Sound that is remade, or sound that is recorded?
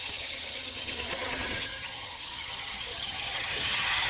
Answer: remade